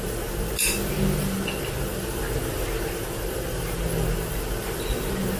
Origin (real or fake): real